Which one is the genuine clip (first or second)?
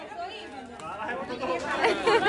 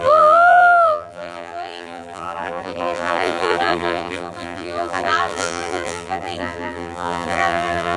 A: first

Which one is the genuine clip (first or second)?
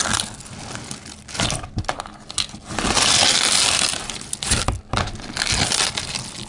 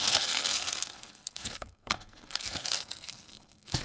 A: first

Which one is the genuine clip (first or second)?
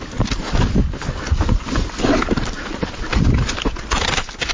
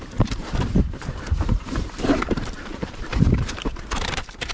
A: first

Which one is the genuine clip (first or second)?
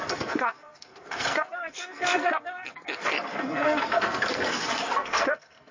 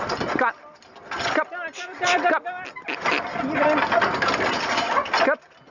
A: second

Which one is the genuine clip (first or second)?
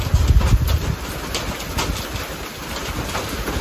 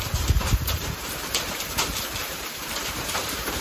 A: first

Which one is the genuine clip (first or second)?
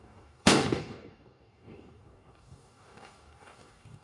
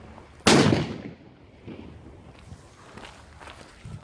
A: second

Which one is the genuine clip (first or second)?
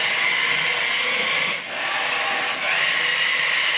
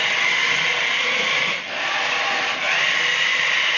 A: first